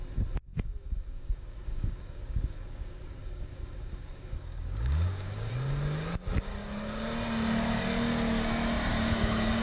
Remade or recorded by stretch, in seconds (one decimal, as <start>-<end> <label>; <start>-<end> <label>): 0.0-0.5 recorded; 0.5-5.5 remade; 5.5-8.9 recorded; 8.9-9.6 remade